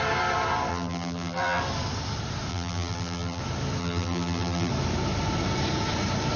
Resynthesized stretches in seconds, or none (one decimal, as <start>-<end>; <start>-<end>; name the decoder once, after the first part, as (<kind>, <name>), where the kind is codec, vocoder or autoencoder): 0.7-1.6 (vocoder, BigVGAN v2); 2.5-3.4; 3.8-4.7